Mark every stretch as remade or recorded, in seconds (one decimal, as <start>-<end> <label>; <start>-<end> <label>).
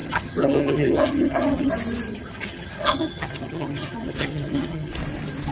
0.0-1.7 remade; 1.7-2.1 recorded; 2.1-4.9 remade; 4.9-5.5 recorded